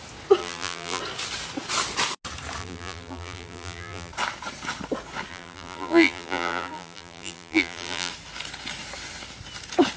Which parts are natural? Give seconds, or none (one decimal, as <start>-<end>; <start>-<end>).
0.0-0.4; 1.0-2.6; 4.1-5.3; 8.1-10.0